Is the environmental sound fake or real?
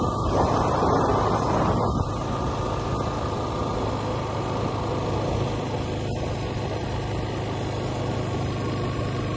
real